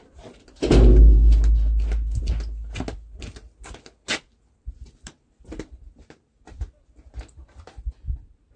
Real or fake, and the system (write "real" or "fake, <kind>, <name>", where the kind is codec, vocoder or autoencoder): real